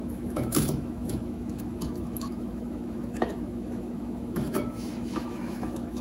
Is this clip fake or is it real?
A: fake